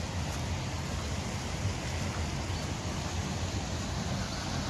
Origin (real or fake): real